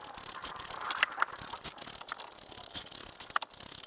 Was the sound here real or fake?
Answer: real